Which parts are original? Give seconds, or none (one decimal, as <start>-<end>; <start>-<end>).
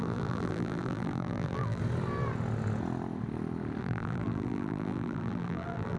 1.8-3.8